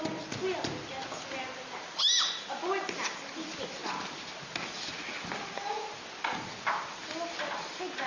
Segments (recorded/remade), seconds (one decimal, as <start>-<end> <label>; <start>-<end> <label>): 0.0-8.1 recorded